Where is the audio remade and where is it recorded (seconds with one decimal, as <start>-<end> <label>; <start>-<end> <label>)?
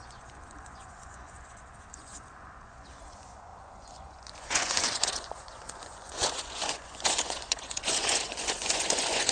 0.0-9.3 remade